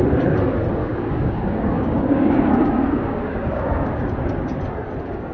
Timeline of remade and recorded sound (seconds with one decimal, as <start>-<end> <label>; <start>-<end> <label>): 0.0-0.8 recorded; 0.8-4.0 remade; 4.0-5.3 recorded